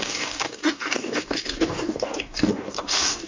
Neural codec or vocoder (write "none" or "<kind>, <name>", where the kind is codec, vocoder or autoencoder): codec, DAC